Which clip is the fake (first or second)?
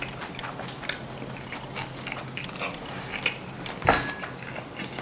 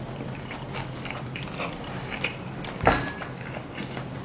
second